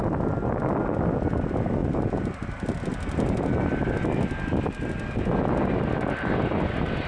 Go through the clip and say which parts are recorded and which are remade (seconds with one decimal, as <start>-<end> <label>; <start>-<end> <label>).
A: 0.0-7.1 recorded